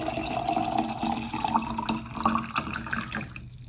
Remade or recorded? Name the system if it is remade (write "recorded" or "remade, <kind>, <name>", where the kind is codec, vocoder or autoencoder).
recorded